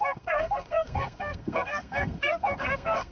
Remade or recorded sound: remade